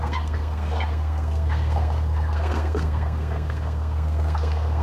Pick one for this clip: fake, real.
fake